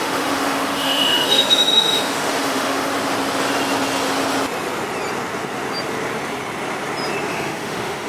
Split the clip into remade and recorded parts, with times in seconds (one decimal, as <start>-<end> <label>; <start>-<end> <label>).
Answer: 0.0-2.9 remade; 2.9-7.3 recorded; 7.3-8.1 remade